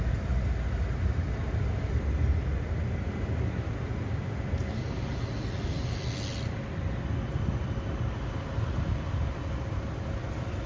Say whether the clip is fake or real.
real